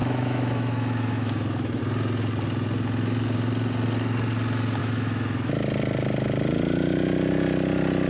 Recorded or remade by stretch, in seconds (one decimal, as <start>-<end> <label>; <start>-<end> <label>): 0.0-1.8 remade; 1.8-4.8 recorded; 4.8-5.5 remade; 5.5-8.1 recorded